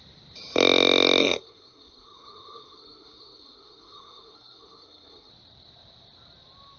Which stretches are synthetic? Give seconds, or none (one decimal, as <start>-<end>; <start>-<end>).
1.2-5.3